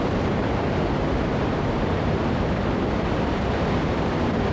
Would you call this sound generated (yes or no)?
no